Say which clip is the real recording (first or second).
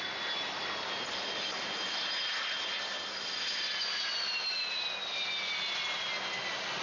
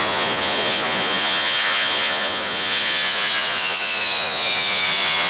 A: first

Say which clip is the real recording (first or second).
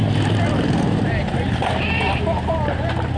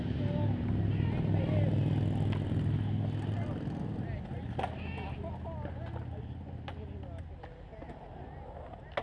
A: second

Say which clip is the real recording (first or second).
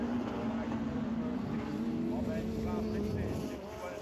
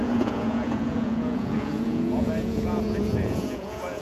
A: first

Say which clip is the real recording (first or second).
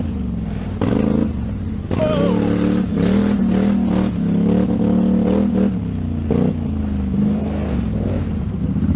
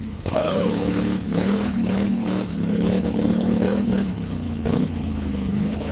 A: first